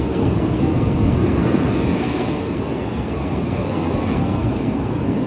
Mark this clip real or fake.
fake